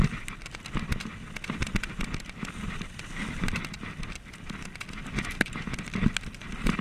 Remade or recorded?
recorded